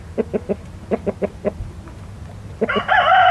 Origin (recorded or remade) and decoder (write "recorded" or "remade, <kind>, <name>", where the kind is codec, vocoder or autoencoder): recorded